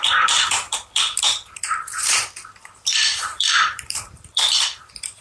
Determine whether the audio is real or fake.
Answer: fake